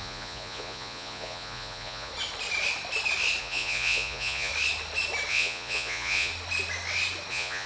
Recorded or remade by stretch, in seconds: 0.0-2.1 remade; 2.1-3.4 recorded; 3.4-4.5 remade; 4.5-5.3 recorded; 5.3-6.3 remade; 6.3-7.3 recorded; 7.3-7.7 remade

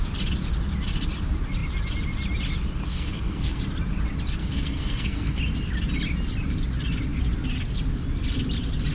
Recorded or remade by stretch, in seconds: 0.0-2.9 recorded; 2.9-3.6 remade; 3.6-4.4 recorded; 4.4-5.4 remade; 5.4-8.9 recorded